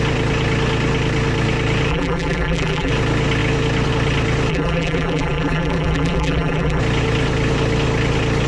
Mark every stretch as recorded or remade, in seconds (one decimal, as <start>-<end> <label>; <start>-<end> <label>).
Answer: 0.0-1.9 recorded; 1.9-2.9 remade; 2.9-4.5 recorded; 4.5-6.8 remade; 6.8-8.5 recorded